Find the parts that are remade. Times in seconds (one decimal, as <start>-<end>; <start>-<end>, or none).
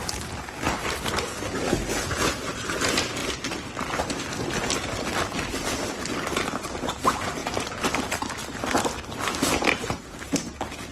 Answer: 7.4-7.9